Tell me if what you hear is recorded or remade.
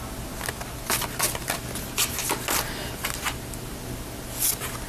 recorded